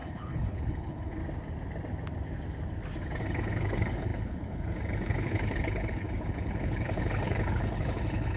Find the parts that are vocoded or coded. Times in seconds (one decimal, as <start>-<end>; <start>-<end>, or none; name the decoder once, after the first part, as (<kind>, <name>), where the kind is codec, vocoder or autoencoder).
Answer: 0.0-1.2 (codec, HILCodec); 3.2-8.4